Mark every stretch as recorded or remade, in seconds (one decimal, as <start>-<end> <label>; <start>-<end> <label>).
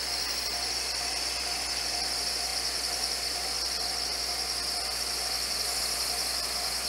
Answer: 0.0-6.9 recorded